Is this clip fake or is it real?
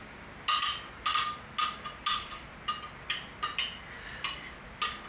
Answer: real